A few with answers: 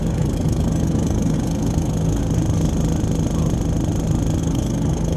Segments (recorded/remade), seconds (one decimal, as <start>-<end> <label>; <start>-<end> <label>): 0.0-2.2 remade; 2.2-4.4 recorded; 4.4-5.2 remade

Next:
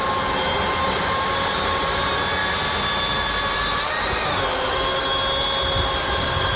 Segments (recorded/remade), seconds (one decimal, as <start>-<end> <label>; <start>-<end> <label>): 0.0-6.6 recorded

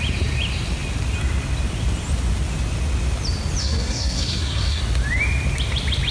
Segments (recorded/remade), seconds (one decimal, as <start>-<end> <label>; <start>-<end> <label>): 0.0-3.6 recorded; 3.6-4.8 remade; 4.8-6.1 recorded